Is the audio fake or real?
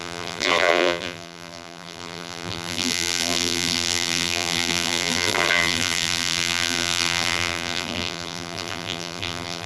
fake